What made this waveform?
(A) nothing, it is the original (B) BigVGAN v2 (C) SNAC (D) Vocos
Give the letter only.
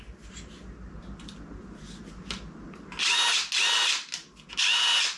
A